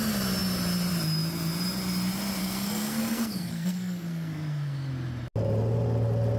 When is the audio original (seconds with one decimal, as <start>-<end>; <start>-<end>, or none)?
0.0-2.4; 4.9-6.4